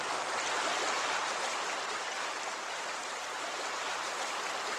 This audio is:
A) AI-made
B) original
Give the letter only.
B